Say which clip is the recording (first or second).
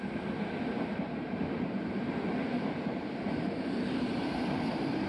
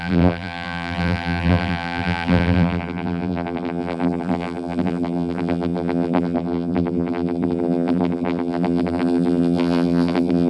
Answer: first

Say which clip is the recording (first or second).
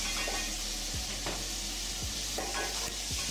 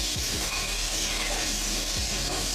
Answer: first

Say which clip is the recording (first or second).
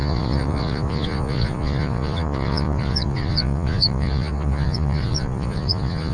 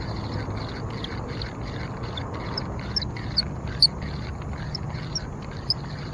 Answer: second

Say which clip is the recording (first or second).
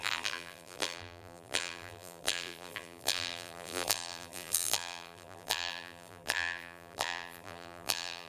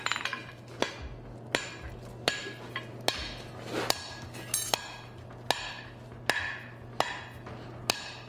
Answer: second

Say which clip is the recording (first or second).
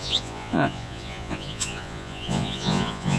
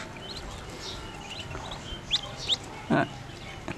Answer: second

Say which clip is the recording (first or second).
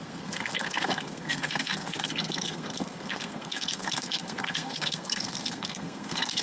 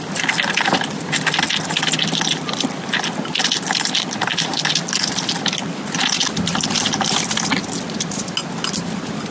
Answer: second